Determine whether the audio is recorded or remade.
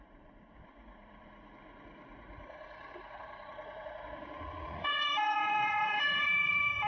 remade